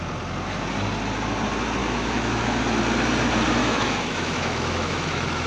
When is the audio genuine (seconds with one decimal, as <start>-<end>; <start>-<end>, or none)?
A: 0.0-1.8; 2.6-3.6